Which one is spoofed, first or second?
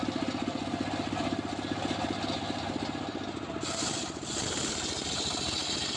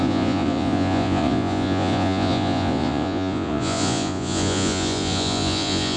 second